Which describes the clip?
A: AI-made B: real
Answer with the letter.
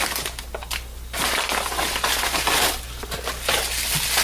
B